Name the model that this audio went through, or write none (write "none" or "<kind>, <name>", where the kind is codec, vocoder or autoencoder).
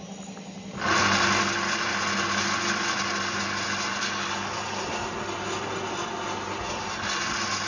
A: none